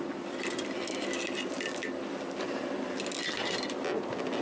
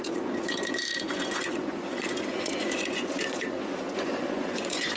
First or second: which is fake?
second